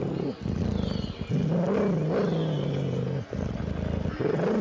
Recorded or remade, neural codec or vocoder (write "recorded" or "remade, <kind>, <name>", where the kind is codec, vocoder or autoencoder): recorded